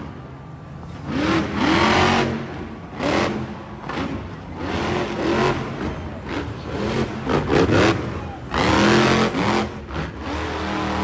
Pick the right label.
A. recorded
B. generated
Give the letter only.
A